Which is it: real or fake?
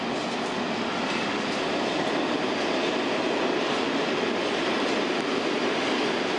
real